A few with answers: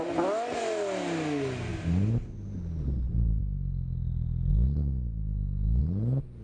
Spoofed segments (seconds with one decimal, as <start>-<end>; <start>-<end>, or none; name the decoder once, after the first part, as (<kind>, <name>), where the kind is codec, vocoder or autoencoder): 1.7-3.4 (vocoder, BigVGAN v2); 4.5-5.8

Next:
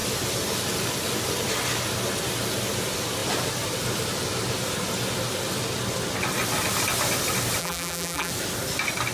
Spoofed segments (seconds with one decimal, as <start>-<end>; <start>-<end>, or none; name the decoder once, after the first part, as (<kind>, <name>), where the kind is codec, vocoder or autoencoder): 7.6-8.3 (vocoder, BigVGAN v2)

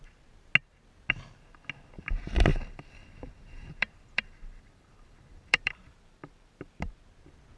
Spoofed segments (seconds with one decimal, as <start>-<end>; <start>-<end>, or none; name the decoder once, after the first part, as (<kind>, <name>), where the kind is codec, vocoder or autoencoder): 2.5-6.9 (vocoder, BigVGAN v2)

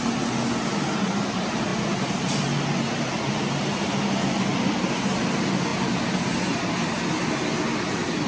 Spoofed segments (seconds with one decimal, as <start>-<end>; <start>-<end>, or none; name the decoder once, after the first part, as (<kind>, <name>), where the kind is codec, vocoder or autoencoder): 4.5-5.2 (vocoder, BigVGAN v2)

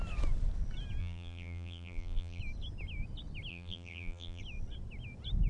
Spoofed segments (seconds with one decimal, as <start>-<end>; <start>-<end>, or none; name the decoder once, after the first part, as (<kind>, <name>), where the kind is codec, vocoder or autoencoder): 1.0-2.4 (vocoder, BigVGAN v2); 3.5-4.4